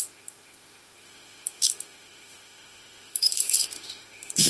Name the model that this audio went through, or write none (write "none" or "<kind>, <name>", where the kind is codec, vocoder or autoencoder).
autoencoder, DAC-VAE